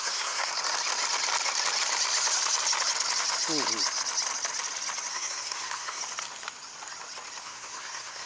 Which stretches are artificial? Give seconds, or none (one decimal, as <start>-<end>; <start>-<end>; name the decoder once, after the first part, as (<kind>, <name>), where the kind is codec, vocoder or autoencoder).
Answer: 0.0-0.5 (codec, SNAC); 5.1-6.0; 7.4-8.3